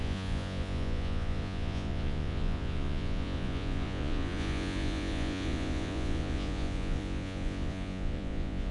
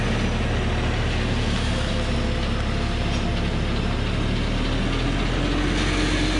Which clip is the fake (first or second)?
first